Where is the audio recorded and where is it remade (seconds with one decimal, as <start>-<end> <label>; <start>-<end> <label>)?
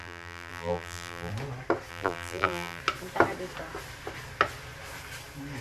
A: 0.0-1.3 remade; 1.3-1.9 recorded; 1.9-2.8 remade; 2.8-5.6 recorded